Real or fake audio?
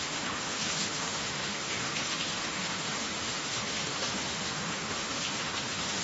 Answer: fake